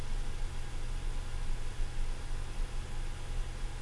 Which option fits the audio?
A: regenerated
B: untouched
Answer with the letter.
B